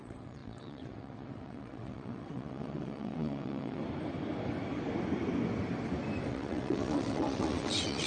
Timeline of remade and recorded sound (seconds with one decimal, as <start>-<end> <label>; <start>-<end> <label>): 0.0-3.8 remade; 3.8-6.3 recorded; 6.3-8.1 remade